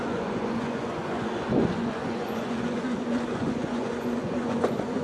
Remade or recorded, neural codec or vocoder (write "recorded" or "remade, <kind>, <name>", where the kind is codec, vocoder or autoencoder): remade, vocoder, Vocos